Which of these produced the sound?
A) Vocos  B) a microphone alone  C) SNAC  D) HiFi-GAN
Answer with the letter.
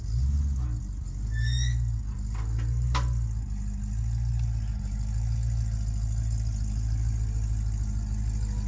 B